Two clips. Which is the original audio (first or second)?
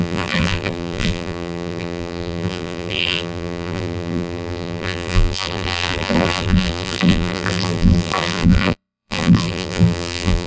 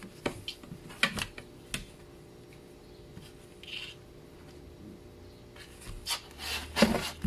second